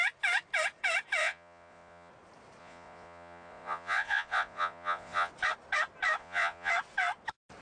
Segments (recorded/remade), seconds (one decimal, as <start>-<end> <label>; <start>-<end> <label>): 0.0-1.2 recorded; 1.2-2.1 remade; 2.1-2.6 recorded; 2.6-5.3 remade; 5.3-6.2 recorded; 6.2-6.7 remade; 6.7-7.6 recorded